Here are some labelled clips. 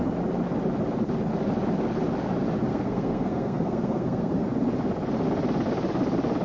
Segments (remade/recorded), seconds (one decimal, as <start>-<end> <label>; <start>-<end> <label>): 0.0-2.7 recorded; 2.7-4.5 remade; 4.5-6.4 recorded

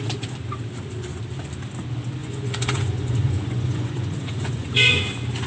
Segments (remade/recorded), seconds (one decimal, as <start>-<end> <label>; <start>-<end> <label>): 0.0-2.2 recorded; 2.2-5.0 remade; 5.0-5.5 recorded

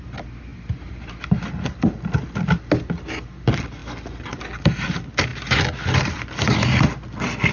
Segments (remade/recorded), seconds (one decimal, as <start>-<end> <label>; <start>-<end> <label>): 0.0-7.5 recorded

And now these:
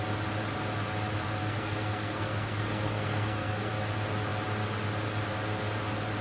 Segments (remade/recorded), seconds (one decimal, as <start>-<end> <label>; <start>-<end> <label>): 0.0-1.4 recorded; 1.4-3.7 remade; 3.7-6.2 recorded

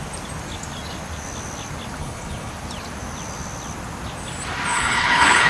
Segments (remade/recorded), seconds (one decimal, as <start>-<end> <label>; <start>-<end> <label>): 0.0-2.0 recorded; 2.0-2.5 remade; 2.5-4.7 recorded; 4.7-5.5 remade

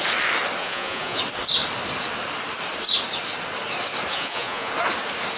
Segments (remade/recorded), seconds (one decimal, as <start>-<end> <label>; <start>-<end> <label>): 0.0-0.6 recorded; 0.6-1.2 remade; 1.2-4.1 recorded; 4.1-4.7 remade; 4.7-5.4 recorded

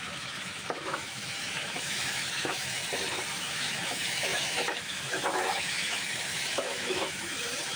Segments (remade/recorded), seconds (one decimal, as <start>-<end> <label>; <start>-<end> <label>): 0.0-2.8 remade; 2.8-3.3 recorded; 3.3-7.8 remade

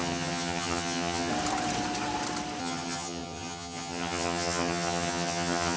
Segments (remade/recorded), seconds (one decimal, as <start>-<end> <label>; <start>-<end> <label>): 0.0-1.3 remade; 1.3-2.6 recorded; 2.6-5.8 remade